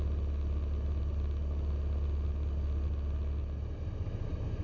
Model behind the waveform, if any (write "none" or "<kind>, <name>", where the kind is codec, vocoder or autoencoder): none